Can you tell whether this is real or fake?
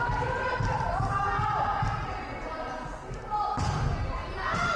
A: real